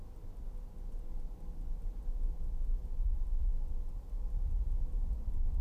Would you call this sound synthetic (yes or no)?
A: no